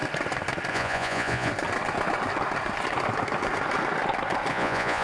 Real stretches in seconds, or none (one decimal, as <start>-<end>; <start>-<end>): 0.0-0.7; 1.5-4.5